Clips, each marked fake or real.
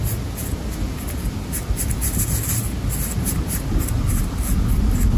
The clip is real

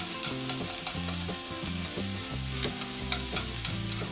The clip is real